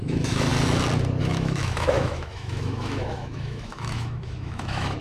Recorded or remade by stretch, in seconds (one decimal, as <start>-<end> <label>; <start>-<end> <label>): 0.0-0.5 remade; 0.5-1.2 recorded; 1.2-5.0 remade